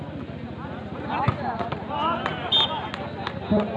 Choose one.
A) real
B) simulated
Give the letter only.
A